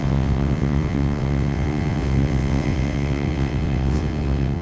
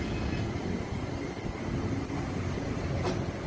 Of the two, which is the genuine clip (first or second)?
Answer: second